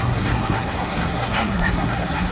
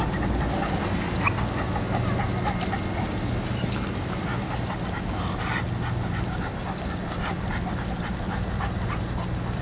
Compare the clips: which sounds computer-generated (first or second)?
first